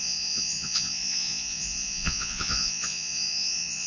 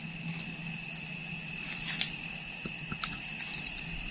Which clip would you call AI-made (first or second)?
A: first